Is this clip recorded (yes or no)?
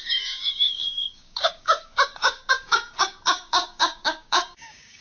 no